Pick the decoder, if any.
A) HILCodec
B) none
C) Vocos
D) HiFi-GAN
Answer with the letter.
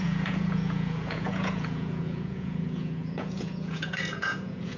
C